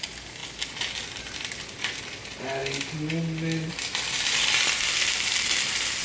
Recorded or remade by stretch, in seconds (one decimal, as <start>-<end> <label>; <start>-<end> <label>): 0.0-6.0 recorded